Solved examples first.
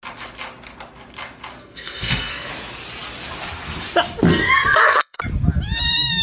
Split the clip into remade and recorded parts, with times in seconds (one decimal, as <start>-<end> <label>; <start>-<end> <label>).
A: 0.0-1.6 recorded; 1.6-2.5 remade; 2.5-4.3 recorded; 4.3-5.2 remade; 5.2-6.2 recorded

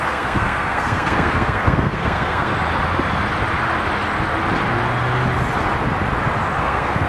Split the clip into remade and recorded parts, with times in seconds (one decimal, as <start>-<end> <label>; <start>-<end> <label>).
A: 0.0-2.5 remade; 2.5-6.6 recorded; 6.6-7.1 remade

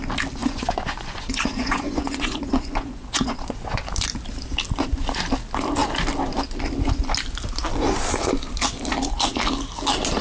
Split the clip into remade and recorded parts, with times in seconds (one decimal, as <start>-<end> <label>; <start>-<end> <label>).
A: 0.0-0.4 recorded; 0.4-3.8 remade; 3.8-10.2 recorded